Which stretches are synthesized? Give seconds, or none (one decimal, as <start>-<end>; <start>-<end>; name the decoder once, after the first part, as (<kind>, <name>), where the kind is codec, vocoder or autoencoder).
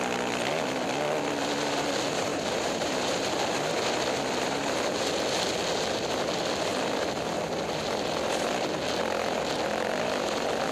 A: 2.3-2.9 (vocoder, BigVGAN v2)